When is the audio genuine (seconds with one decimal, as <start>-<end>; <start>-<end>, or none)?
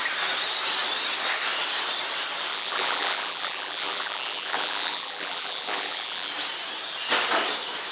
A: 0.0-2.5; 6.3-7.9